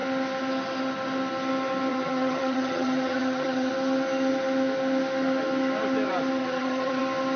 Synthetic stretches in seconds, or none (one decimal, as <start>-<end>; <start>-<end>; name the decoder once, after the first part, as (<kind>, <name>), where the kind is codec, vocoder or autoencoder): 1.9-3.7 (vocoder, HiFi-GAN); 6.4-7.0